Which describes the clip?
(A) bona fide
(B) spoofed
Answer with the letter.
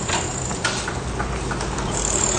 A